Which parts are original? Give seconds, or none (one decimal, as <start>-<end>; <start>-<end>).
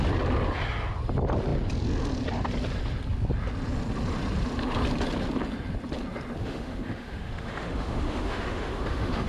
0.0-6.4